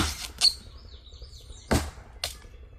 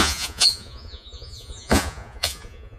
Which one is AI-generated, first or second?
second